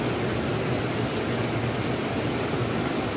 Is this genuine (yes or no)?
yes